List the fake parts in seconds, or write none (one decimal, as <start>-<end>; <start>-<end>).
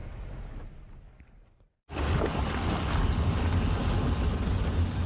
none